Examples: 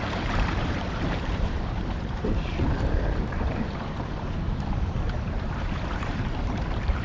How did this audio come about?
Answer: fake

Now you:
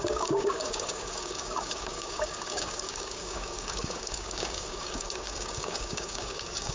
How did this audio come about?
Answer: fake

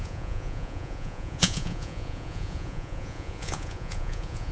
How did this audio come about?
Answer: fake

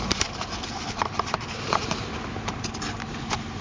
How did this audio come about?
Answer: fake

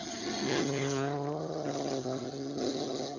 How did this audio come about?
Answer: fake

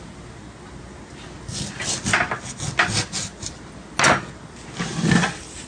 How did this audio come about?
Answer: real